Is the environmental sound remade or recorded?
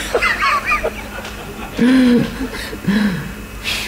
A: recorded